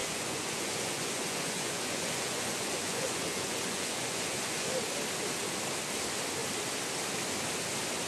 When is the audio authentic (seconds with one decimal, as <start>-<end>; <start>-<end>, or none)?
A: 4.7-8.1